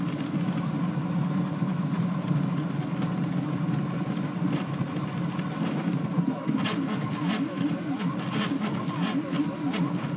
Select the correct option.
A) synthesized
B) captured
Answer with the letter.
B